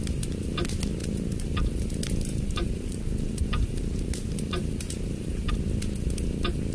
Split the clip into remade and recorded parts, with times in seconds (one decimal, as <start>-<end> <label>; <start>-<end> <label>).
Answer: 0.0-1.0 recorded; 1.0-1.8 remade; 1.8-2.3 recorded; 2.3-5.5 remade; 5.5-6.7 recorded